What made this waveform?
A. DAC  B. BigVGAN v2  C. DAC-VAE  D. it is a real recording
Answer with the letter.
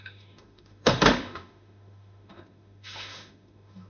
C